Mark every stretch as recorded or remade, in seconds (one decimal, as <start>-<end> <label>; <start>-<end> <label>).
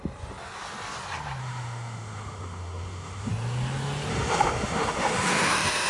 0.0-1.4 recorded; 1.4-3.3 remade; 3.3-4.1 recorded; 4.1-5.9 remade